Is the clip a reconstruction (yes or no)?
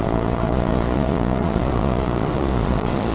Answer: yes